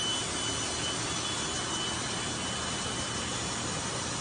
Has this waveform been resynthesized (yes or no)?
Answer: no